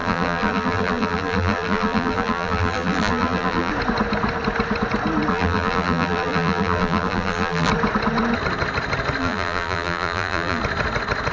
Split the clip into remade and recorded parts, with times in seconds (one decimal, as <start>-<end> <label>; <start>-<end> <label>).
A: 0.0-3.7 remade; 3.7-5.3 recorded; 5.3-7.7 remade; 7.7-9.2 recorded; 9.2-10.6 remade; 10.6-11.3 recorded